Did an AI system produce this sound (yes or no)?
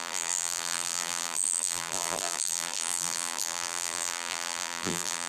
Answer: yes